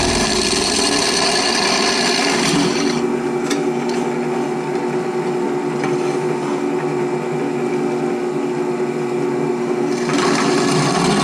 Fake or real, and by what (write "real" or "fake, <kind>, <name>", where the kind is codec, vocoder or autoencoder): real